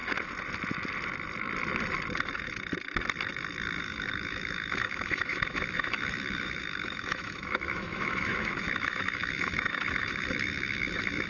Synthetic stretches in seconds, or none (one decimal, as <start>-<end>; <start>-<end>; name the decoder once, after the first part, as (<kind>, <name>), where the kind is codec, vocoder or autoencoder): 3.8-11.3 (autoencoder, DAC-VAE)